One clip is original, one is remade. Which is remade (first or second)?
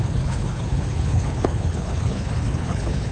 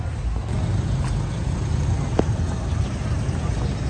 first